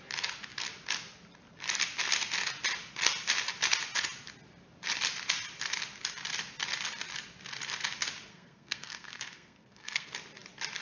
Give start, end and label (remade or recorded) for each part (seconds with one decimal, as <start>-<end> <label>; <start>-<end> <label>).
0.0-8.3 recorded; 8.3-10.1 remade; 10.1-10.8 recorded